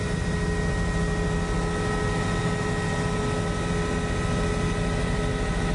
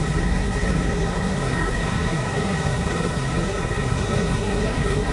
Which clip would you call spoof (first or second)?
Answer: second